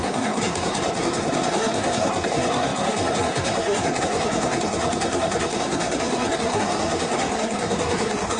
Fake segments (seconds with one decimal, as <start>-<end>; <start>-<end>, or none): 0.0-8.4